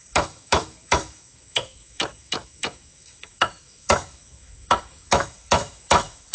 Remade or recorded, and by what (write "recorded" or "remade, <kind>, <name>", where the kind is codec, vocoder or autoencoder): remade, autoencoder, DAC-VAE